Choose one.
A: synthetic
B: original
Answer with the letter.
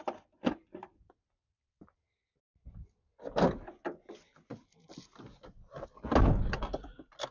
B